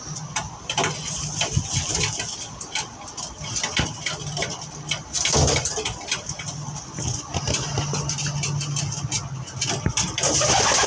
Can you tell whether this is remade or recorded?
recorded